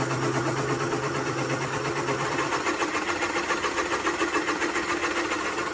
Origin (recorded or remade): recorded